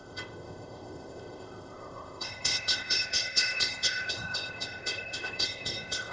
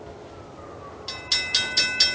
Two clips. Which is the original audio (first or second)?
second